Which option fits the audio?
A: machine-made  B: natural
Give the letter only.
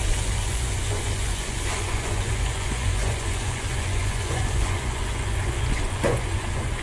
A